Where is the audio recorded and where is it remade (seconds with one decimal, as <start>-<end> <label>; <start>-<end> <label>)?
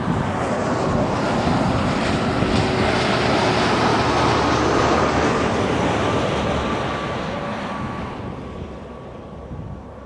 0.0-10.1 recorded